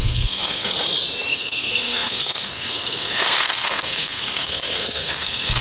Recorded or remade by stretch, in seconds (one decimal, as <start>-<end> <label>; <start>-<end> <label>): 0.0-0.7 remade; 0.7-1.3 recorded; 1.3-5.6 remade